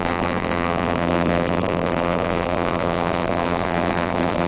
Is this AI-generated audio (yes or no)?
yes